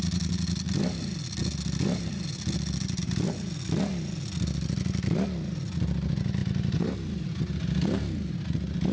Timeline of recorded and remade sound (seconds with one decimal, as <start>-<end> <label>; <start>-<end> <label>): 0.0-8.9 recorded